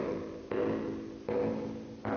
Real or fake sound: real